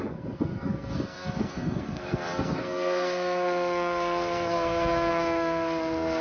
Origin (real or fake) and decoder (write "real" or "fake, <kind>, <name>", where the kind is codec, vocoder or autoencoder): fake, codec, SNAC